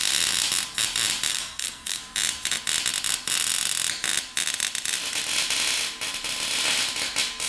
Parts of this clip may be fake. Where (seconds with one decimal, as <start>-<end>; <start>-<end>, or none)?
1.3-2.0